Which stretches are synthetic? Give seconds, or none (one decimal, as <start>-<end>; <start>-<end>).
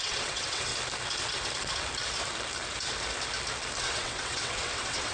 0.0-0.7; 3.8-5.1